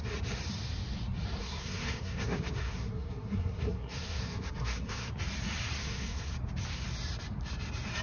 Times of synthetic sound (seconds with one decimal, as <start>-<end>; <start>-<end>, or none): 1.4-5.1; 5.8-6.3